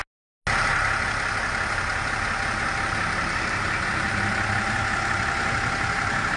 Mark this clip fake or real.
real